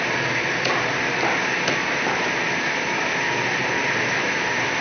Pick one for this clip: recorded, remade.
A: recorded